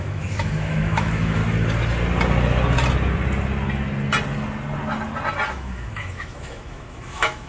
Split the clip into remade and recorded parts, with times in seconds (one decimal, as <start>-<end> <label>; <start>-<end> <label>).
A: 0.0-1.4 remade; 1.4-5.5 recorded; 5.5-7.5 remade